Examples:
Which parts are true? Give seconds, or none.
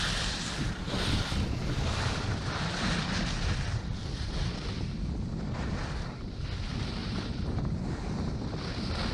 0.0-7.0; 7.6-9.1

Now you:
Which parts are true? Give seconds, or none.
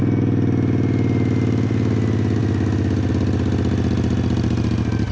0.0-5.1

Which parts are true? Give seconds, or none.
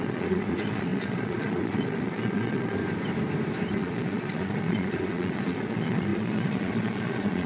2.8-3.7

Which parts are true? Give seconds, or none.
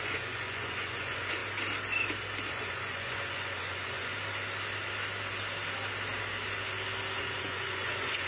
1.4-2.5; 4.1-7.2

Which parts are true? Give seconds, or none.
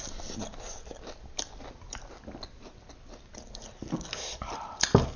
0.0-5.2